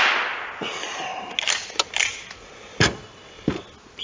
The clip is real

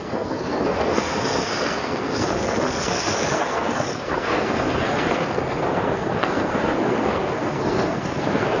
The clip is fake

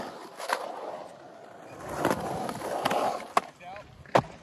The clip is real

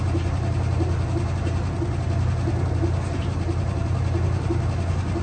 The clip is real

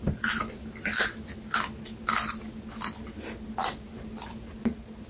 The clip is real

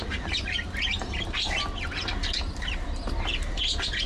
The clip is fake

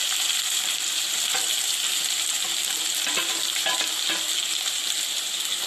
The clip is real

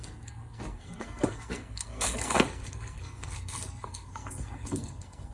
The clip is fake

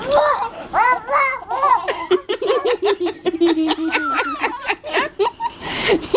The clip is fake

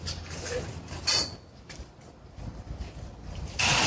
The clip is real